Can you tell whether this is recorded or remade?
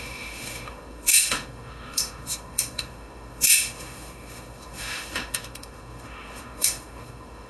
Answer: remade